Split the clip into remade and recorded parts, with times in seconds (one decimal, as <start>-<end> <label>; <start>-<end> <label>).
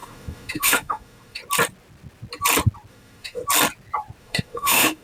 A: 0.0-1.4 remade; 1.4-2.9 recorded; 2.9-3.4 remade; 3.4-4.2 recorded; 4.2-5.0 remade